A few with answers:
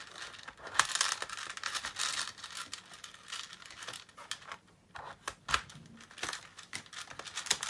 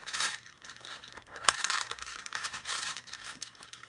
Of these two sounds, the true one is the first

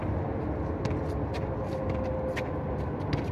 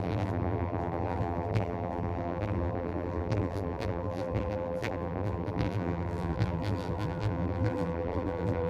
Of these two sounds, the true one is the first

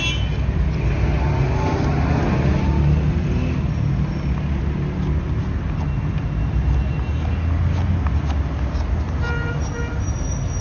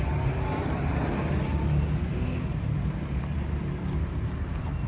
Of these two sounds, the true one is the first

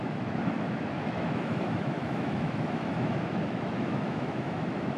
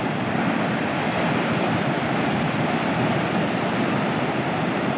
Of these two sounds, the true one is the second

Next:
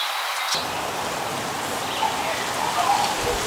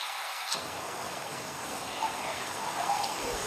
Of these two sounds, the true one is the first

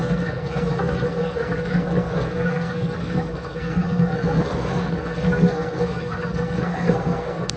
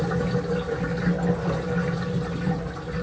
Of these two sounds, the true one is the second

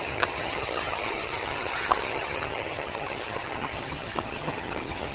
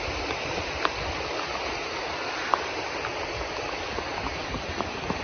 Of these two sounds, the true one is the second